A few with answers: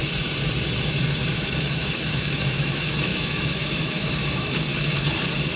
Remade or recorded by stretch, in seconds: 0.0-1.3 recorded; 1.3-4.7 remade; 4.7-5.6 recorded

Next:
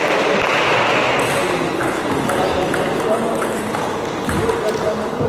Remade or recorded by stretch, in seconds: 0.0-5.3 recorded

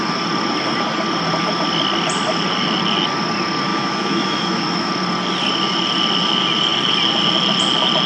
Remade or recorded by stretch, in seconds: 0.0-3.7 recorded; 3.7-4.9 remade; 4.9-8.1 recorded

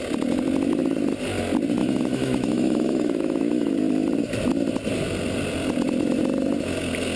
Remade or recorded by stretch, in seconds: 0.0-1.8 recorded; 1.8-3.7 remade; 3.7-7.2 recorded